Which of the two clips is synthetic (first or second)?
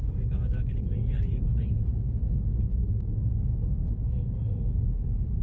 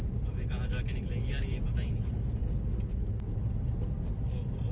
first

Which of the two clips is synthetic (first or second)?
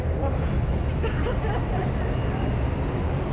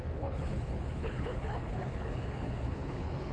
second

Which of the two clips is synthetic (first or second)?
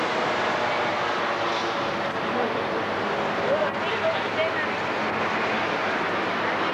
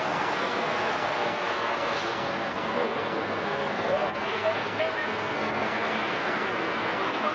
second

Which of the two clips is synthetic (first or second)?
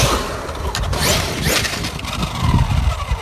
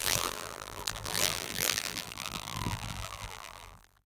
second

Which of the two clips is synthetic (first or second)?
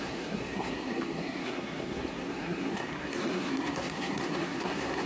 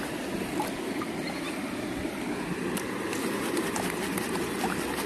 first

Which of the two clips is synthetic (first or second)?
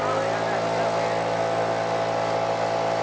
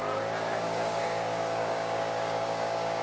second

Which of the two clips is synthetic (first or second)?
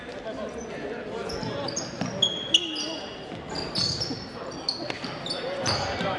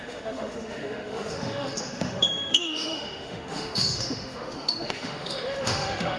second